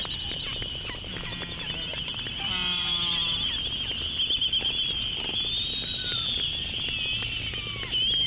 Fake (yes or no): no